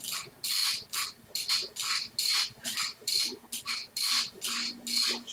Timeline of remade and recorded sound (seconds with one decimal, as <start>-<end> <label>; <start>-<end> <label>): 0.0-0.6 recorded; 0.6-1.5 remade; 1.5-2.3 recorded; 2.3-4.7 remade; 4.7-5.3 recorded